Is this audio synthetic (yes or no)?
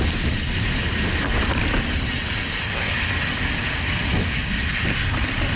yes